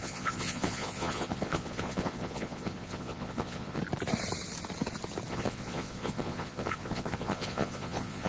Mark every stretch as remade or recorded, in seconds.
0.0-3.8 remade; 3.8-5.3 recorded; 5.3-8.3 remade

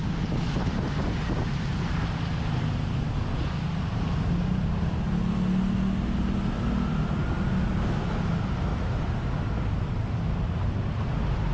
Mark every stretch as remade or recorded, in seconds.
0.0-11.5 recorded

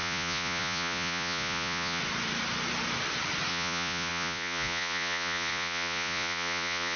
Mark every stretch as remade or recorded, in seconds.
0.0-2.0 remade; 2.0-3.5 recorded; 3.5-7.0 remade